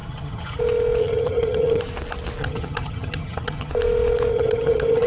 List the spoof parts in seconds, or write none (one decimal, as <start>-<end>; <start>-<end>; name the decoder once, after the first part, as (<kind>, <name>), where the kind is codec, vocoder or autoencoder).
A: 0.0-0.6 (vocoder, HiFi-GAN); 1.0-1.8; 2.4-3.7; 4.3-5.1